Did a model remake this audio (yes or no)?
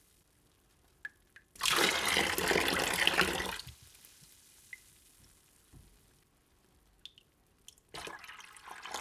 no